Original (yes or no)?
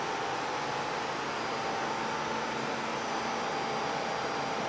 yes